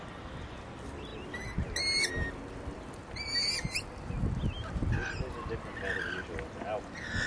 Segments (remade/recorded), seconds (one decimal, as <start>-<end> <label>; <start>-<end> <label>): 0.0-7.3 recorded